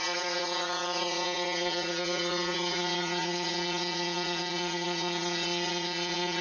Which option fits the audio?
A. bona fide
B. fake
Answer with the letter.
B